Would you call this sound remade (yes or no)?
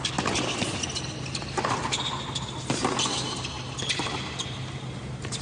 no